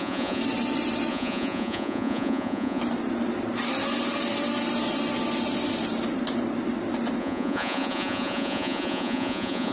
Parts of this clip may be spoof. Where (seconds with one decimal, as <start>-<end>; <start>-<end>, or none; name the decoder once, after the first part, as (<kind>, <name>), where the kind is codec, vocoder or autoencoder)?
0.0-0.4 (vocoder, Vocos); 1.1-2.8; 7.2-9.7

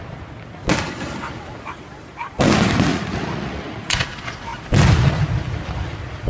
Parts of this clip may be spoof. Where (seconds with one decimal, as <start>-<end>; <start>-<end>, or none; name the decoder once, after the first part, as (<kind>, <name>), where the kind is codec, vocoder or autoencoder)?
2.9-3.9 (vocoder, Vocos)

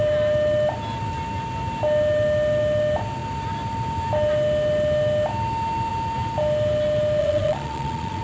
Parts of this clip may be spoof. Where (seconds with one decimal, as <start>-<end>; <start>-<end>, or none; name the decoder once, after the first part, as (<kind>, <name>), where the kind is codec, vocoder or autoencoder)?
7.2-8.2 (vocoder, Vocos)

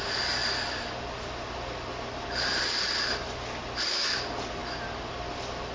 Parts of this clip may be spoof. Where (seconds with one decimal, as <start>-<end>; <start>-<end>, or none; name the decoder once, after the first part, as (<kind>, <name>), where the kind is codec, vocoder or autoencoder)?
none

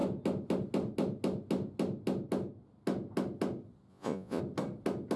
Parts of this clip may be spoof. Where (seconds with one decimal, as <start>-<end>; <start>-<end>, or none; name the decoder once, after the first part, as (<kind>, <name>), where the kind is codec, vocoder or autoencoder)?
3.9-4.4 (vocoder, Vocos)